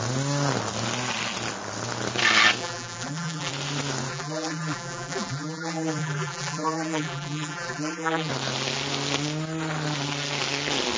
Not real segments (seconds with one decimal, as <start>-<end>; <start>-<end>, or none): 2.6-3.5; 4.1-8.3